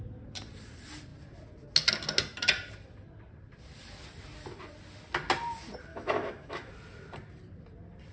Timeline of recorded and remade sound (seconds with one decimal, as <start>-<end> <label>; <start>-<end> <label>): 0.0-5.9 recorded; 5.9-6.7 remade; 6.7-8.1 recorded

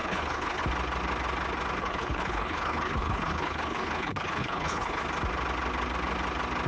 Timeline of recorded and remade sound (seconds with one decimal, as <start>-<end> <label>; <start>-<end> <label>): 0.0-0.6 remade; 0.6-1.8 recorded; 1.8-5.0 remade; 5.0-6.7 recorded